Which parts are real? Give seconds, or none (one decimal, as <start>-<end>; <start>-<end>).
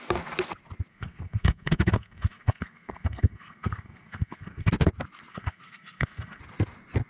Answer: 0.0-0.9; 4.7-5.3; 6.4-7.1